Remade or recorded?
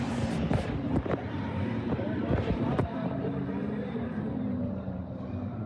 remade